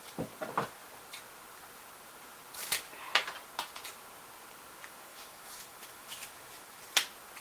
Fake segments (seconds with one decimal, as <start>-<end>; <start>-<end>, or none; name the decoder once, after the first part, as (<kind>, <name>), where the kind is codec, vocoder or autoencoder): 5.1-6.8 (autoencoder, DAC-VAE)